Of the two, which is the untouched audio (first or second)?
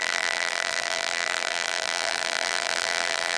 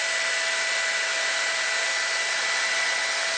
second